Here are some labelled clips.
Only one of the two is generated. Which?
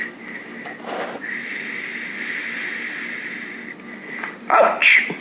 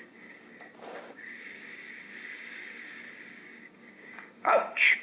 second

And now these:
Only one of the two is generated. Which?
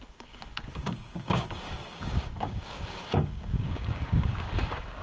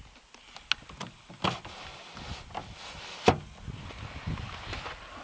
first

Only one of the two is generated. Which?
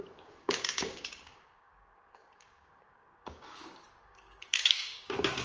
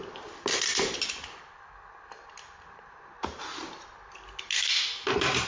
first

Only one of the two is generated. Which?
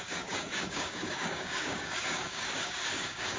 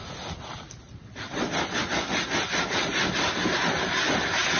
first